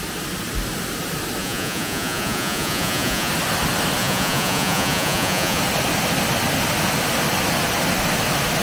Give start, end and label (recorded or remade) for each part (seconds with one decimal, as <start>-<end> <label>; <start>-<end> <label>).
0.0-1.4 recorded; 1.4-3.3 remade; 3.3-4.0 recorded; 4.0-5.6 remade; 5.6-8.6 recorded